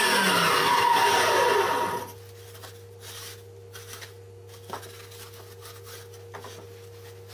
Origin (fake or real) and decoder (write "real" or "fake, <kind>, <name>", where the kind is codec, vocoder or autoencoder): real